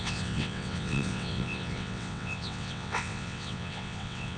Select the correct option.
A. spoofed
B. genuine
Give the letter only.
A